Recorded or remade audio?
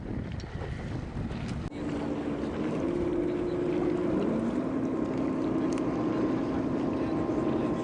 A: recorded